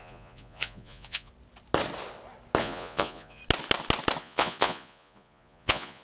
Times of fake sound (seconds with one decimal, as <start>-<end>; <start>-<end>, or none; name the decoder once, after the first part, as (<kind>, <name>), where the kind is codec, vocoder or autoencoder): 0.0-1.3 (vocoder, Vocos); 2.6-3.4; 4.2-6.0